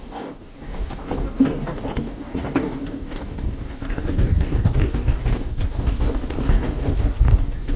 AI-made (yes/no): yes